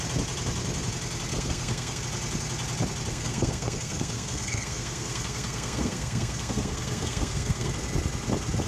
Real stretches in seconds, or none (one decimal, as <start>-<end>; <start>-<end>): 0.0-1.3; 2.0-3.1; 7.7-8.7